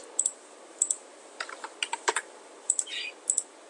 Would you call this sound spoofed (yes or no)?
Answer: no